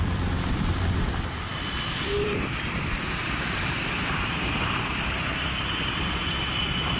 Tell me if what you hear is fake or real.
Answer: fake